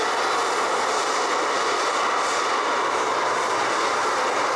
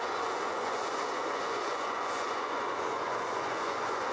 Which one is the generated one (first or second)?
second